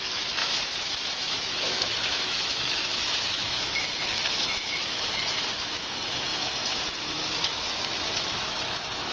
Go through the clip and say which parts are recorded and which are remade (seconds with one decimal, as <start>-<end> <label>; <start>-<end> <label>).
0.0-9.1 remade